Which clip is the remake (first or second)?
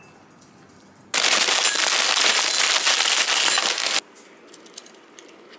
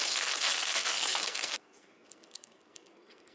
second